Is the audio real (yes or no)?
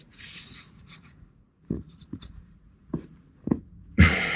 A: no